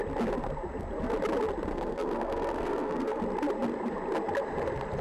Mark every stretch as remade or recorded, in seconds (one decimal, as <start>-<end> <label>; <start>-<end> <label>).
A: 0.0-1.7 recorded; 1.7-3.2 remade; 3.2-5.0 recorded